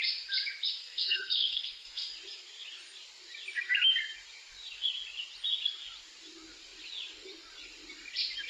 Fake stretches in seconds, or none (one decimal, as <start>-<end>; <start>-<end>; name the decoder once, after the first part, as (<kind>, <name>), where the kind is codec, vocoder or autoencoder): 0.8-2.1 (codec, SNAC)